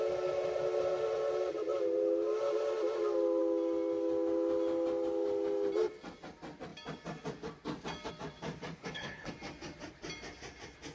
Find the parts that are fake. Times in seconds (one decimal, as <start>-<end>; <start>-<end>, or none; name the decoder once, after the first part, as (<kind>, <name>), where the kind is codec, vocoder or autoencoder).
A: 8.8-9.3 (codec, HILCodec)